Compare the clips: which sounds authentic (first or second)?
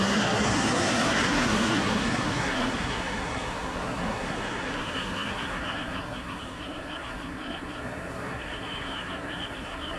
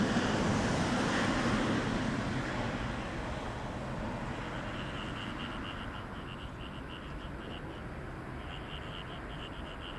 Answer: second